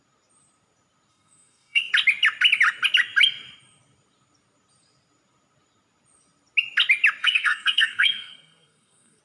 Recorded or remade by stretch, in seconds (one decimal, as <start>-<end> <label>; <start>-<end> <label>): 0.0-1.1 recorded; 1.1-1.9 remade; 1.9-7.2 recorded; 7.2-9.2 remade